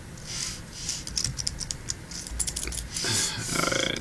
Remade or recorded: recorded